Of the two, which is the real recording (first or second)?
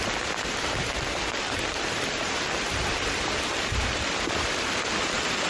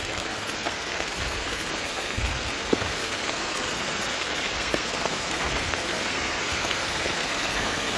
first